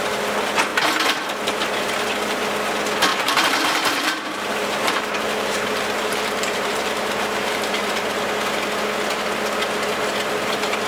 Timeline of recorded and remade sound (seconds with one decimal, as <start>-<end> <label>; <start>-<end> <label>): 0.0-3.1 recorded; 3.1-8.0 remade; 8.0-10.9 recorded